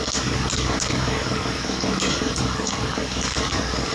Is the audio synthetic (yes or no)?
yes